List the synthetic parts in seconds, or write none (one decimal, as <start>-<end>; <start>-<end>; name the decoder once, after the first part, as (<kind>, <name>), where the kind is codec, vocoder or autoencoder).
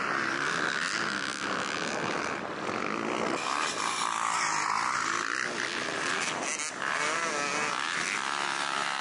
none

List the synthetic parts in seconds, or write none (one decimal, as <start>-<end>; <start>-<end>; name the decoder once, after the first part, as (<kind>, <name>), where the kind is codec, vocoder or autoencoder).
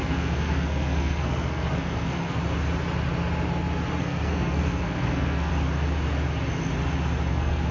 0.0-2.4 (codec, SNAC); 4.0-5.5; 7.3-7.7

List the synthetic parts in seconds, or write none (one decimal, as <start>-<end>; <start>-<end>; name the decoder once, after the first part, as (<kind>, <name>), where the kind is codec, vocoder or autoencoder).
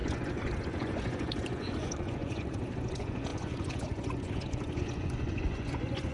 0.0-6.1 (vocoder, Vocos)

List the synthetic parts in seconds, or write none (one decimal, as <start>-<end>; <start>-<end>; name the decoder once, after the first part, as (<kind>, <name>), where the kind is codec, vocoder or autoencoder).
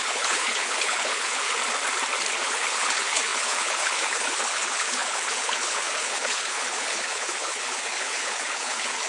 0.0-1.6 (codec, HILCodec); 2.4-9.1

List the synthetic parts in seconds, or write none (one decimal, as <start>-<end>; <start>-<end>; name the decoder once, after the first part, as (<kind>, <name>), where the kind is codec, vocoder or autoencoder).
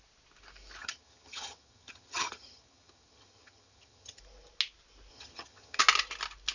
0.8-4.2 (vocoder, HiFi-GAN); 5.1-5.8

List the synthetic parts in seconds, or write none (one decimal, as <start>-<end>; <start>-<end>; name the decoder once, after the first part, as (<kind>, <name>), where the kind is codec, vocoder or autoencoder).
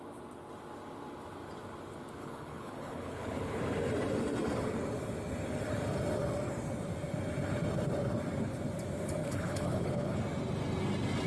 2.2-3.6 (codec, HILCodec); 9.2-10.2